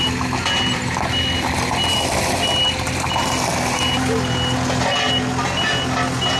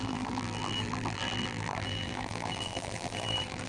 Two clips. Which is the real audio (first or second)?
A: first